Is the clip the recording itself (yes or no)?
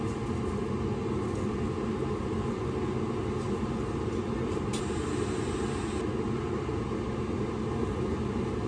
yes